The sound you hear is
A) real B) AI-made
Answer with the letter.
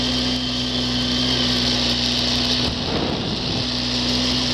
A